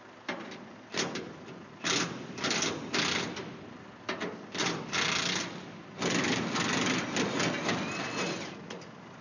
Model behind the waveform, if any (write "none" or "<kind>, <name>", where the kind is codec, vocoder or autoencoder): none